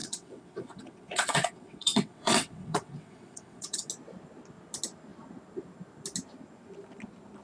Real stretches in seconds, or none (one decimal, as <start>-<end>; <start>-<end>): 3.9-7.4